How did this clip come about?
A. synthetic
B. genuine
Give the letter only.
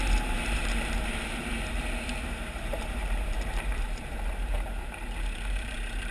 A